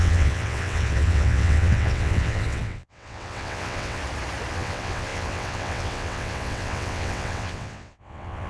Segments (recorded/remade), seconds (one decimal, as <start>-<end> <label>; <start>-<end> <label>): 0.0-4.0 remade; 4.0-4.5 recorded; 4.5-8.5 remade